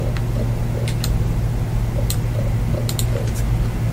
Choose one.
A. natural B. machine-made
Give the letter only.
A